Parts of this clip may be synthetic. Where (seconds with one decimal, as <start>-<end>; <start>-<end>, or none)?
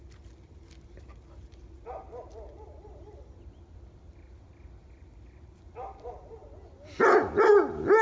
none